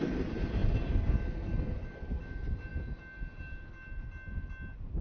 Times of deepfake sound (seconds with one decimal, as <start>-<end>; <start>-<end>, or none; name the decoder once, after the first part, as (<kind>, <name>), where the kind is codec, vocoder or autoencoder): none